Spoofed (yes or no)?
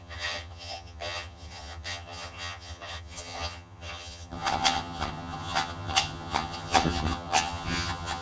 yes